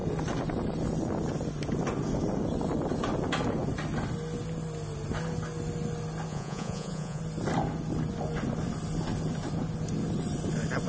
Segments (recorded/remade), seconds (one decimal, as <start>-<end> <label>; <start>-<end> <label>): 0.0-6.3 recorded; 6.3-7.2 remade; 7.2-10.9 recorded